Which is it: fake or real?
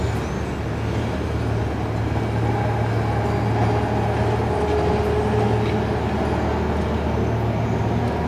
real